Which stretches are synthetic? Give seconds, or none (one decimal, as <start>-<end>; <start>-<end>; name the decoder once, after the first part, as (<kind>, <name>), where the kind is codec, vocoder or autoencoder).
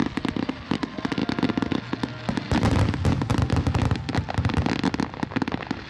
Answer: none